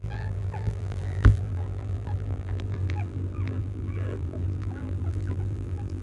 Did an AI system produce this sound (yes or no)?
yes